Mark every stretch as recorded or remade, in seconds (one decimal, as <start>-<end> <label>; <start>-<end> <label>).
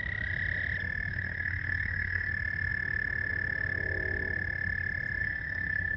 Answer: 0.0-1.1 recorded; 1.1-2.3 remade; 2.3-5.2 recorded; 5.2-6.0 remade